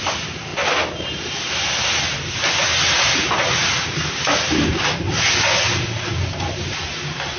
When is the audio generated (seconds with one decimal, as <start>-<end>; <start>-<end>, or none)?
none